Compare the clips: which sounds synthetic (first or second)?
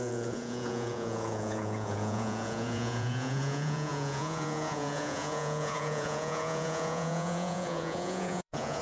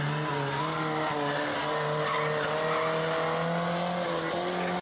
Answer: first